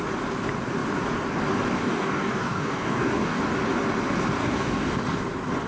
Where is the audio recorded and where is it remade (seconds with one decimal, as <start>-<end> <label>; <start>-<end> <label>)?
0.0-1.8 recorded; 1.8-3.4 remade; 3.4-4.4 recorded; 4.4-5.0 remade; 5.0-5.7 recorded